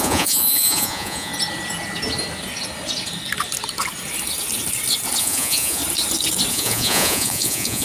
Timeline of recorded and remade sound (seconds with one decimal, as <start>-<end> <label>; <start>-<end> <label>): 0.0-1.3 remade; 1.3-5.2 recorded; 5.2-5.8 remade; 5.8-6.5 recorded; 6.5-7.8 remade